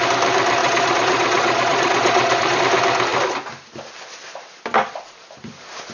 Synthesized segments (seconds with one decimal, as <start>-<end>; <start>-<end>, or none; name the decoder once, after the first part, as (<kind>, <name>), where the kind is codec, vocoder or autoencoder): 0.6-2.6 (vocoder, Vocos)